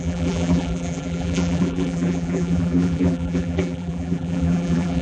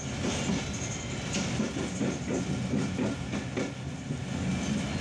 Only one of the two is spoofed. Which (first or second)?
first